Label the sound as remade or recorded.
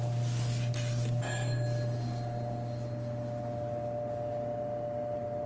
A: recorded